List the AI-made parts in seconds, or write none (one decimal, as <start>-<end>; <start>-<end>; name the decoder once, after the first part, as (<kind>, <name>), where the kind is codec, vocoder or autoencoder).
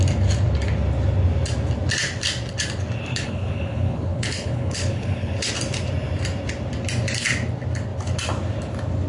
3.1-5.5 (codec, HILCodec)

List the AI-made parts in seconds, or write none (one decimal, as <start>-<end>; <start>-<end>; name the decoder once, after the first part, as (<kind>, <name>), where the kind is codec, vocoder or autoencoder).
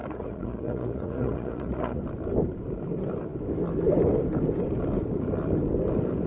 0.0-2.0 (vocoder, Vocos)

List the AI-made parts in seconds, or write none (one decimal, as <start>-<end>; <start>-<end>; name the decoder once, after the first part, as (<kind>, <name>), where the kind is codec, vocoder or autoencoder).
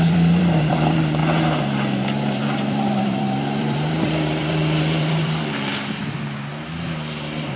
0.0-1.2 (vocoder, BigVGAN v2); 2.4-5.7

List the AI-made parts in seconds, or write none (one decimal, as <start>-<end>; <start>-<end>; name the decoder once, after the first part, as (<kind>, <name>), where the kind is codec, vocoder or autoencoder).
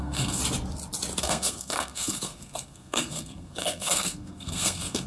0.0-0.4 (codec, SNAC); 1.2-5.1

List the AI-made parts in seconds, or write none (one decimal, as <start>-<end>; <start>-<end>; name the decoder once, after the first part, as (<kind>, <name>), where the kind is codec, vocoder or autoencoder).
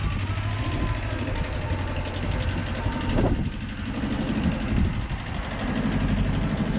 none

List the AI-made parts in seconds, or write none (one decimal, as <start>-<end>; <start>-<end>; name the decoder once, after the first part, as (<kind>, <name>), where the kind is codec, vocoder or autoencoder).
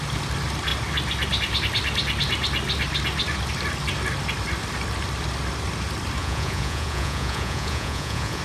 6.2-8.4 (vocoder, Vocos)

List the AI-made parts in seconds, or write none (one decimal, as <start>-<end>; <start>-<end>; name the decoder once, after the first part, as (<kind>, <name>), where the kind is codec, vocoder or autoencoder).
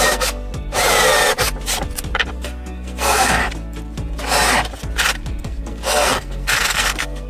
0.0-0.5 (codec, SNAC); 2.3-3.4; 5.4-7.3